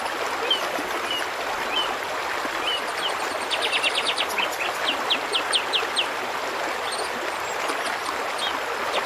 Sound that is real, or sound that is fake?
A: real